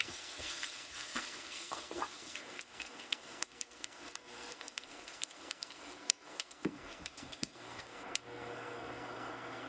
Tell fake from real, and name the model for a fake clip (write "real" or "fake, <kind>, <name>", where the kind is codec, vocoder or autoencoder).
fake, codec, SNAC